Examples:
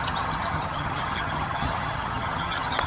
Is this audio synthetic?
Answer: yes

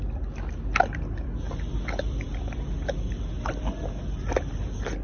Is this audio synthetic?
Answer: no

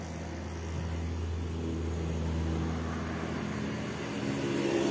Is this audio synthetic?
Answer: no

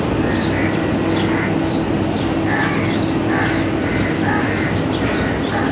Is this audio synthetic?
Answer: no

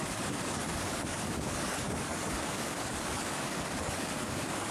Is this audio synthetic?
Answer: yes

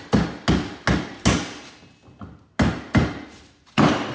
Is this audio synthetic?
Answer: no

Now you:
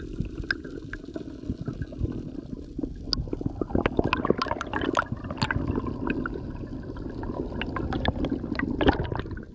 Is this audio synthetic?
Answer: no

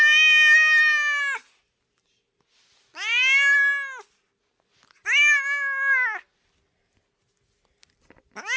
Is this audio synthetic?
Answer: no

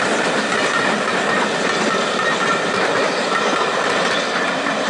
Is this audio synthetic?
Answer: no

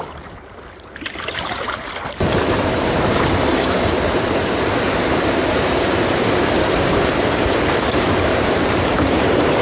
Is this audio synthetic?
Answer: yes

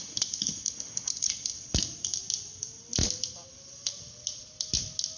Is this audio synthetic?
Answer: no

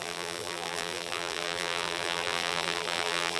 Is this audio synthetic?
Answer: yes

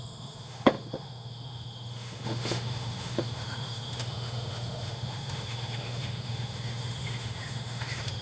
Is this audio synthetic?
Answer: yes